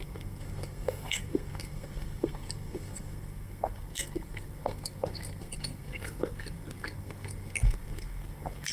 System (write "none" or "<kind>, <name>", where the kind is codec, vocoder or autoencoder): codec, SNAC